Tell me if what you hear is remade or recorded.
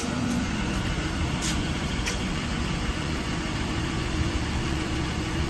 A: remade